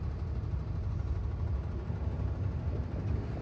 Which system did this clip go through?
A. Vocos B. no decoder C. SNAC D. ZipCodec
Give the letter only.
B